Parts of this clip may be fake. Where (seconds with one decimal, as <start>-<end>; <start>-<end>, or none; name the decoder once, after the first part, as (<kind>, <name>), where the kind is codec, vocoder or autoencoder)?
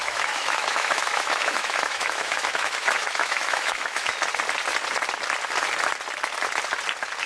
0.0-4.1 (autoencoder, DAC-VAE)